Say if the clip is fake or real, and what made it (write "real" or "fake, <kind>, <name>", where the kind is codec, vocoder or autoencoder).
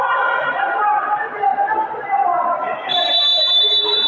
real